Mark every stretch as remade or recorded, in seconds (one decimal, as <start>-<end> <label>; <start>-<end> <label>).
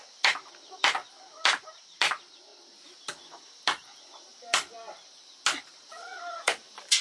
0.0-1.0 remade; 1.0-1.6 recorded; 1.6-2.5 remade; 2.5-5.6 recorded; 5.6-7.0 remade